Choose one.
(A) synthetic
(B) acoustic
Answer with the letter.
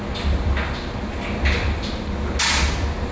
B